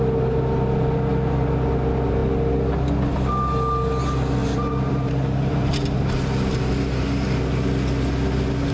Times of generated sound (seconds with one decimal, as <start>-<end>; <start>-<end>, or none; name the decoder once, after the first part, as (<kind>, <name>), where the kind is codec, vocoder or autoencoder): 4.4-6.0 (vocoder, BigVGAN v2)